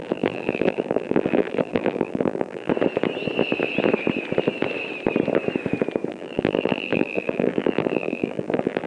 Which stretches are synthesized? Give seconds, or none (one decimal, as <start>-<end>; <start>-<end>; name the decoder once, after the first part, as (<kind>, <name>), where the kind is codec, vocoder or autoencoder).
0.0-2.7 (vocoder, BigVGAN v2); 6.1-8.9